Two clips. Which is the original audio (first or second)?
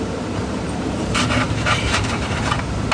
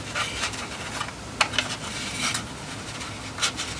second